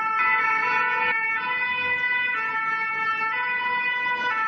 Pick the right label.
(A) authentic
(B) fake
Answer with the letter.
A